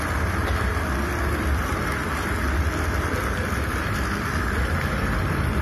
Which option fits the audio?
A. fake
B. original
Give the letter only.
A